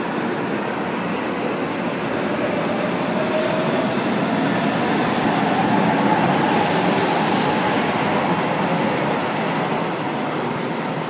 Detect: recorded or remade recorded